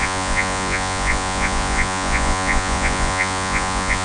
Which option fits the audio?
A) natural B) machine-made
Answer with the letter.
B